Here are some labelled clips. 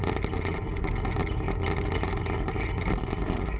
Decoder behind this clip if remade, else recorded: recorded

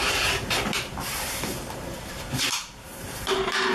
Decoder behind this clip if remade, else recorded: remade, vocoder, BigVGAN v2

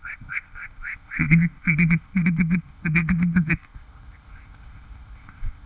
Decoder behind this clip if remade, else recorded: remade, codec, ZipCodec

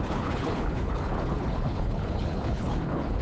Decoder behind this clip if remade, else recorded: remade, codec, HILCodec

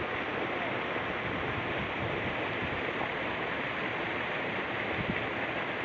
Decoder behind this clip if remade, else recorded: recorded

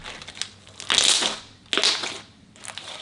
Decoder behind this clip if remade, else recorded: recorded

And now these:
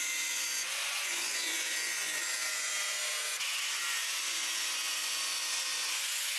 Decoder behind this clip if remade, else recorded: remade, vocoder, Vocos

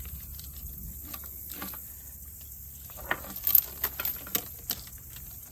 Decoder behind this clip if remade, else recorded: recorded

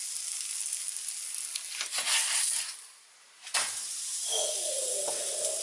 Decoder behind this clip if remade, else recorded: recorded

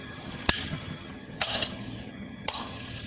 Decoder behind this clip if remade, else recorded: remade, vocoder, HiFi-GAN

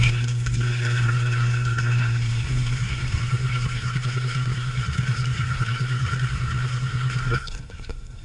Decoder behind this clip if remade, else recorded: remade, codec, SNAC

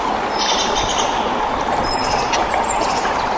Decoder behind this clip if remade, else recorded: recorded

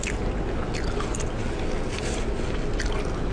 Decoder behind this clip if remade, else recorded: recorded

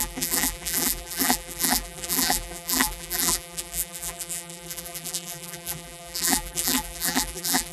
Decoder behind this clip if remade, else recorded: remade, vocoder, BigVGAN v2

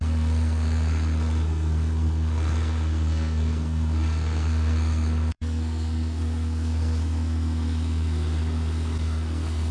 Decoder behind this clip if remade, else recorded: remade, codec, SNAC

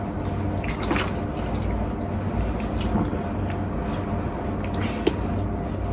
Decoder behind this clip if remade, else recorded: recorded